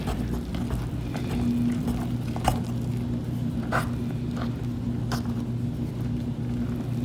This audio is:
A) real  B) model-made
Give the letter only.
A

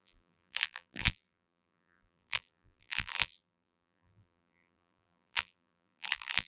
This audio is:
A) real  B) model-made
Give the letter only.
B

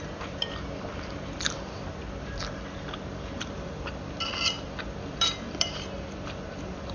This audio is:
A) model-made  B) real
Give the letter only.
A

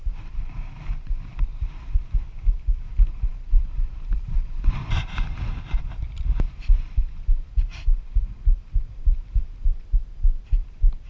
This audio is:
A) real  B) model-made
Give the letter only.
B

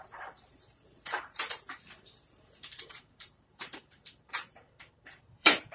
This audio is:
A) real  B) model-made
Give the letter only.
B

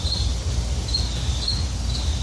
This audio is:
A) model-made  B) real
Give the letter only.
B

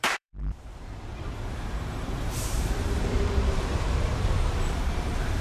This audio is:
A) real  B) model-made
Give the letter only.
B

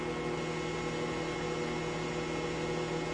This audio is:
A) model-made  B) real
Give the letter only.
B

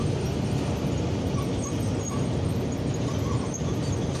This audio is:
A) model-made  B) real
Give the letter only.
B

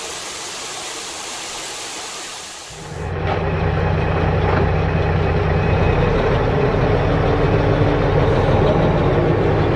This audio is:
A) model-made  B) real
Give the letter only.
B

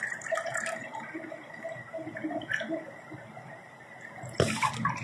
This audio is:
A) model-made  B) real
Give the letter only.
A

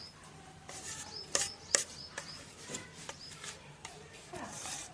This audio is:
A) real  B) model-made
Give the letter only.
B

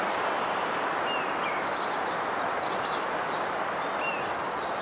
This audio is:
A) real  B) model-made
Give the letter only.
A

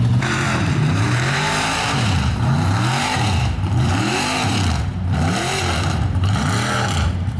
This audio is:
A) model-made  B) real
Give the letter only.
A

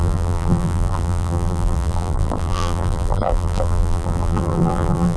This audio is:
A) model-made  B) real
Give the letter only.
A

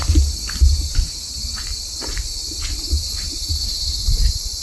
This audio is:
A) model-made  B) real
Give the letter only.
A